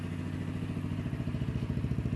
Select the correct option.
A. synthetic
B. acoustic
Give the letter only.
B